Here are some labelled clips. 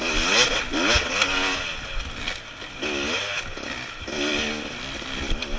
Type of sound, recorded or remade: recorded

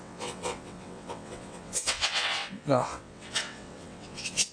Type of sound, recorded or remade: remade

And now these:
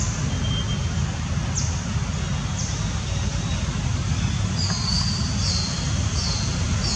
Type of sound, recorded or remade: recorded